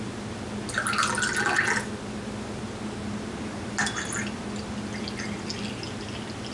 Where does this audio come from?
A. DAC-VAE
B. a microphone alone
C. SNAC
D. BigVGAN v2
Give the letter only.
B